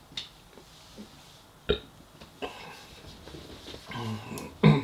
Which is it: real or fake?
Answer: real